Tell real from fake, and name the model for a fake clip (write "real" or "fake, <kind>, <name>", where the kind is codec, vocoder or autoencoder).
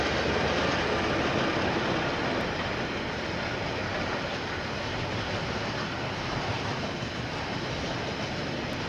real